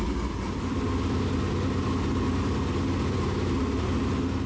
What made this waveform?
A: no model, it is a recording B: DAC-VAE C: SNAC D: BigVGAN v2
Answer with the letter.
A